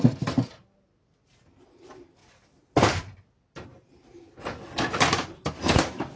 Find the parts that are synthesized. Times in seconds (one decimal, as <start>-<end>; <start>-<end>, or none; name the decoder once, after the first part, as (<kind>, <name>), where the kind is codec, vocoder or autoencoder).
none